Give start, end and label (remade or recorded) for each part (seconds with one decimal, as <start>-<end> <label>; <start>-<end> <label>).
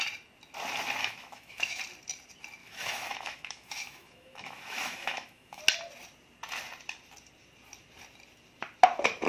0.0-1.0 recorded; 1.0-1.8 remade; 1.8-2.6 recorded; 2.6-5.6 remade; 5.6-9.3 recorded